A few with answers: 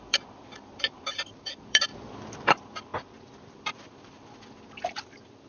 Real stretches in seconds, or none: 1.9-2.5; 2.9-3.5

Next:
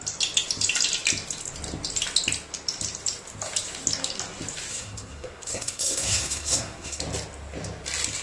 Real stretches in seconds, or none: 0.0-4.7; 7.0-8.2

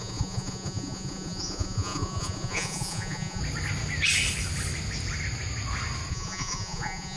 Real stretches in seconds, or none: 3.4-6.1

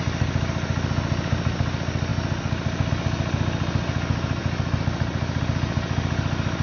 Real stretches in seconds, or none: 0.0-6.6